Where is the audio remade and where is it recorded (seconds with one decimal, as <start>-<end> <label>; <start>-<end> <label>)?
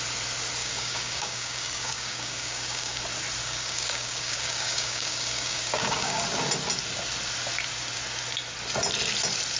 0.0-0.6 recorded; 0.6-3.0 remade; 3.0-3.4 recorded; 3.4-6.2 remade; 6.2-9.6 recorded